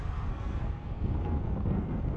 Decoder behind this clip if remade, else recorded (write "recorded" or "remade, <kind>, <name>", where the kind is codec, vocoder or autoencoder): remade, codec, SNAC